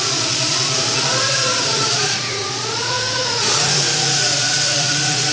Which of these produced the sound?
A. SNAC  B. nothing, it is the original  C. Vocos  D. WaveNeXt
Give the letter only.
C